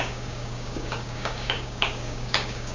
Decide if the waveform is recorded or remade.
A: remade